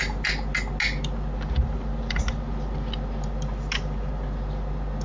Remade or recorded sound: recorded